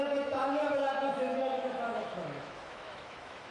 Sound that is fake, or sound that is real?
fake